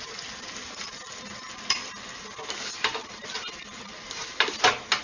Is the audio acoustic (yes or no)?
yes